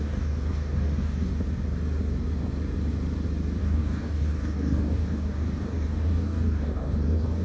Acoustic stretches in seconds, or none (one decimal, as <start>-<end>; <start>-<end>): 1.3-3.6